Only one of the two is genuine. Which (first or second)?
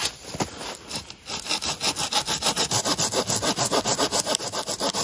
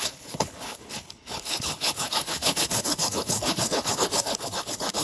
first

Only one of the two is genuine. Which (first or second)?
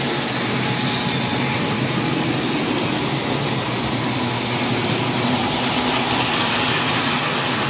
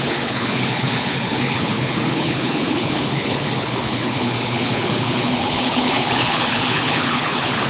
first